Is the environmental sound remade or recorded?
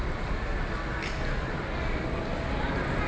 recorded